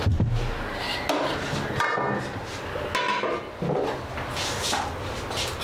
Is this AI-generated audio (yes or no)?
no